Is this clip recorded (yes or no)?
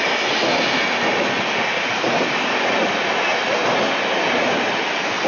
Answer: yes